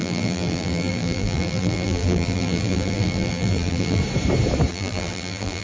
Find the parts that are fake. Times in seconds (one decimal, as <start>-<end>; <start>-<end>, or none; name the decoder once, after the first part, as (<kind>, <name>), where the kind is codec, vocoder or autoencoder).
0.0-4.0 (vocoder, BigVGAN v2); 4.7-5.6